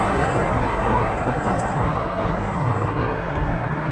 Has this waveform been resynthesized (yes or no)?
yes